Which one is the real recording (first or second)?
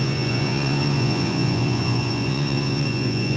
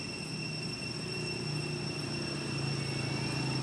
second